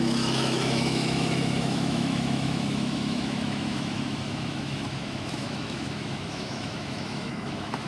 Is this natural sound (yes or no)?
no